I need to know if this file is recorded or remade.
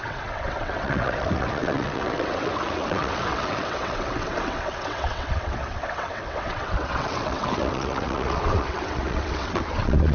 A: remade